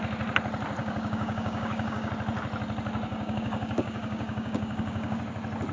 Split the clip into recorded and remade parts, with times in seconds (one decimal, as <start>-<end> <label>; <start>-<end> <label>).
0.0-0.8 recorded; 0.8-2.1 remade; 2.1-3.1 recorded; 3.1-5.2 remade; 5.2-5.7 recorded